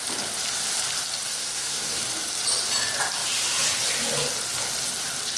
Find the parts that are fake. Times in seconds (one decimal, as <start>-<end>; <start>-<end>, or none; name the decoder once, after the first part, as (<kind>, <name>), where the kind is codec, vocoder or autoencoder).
1.3-2.0 (codec, SNAC)